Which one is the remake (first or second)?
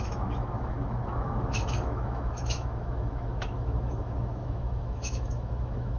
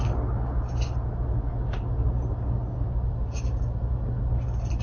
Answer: first